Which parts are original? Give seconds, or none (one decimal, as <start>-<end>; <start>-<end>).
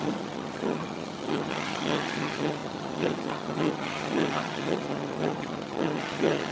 none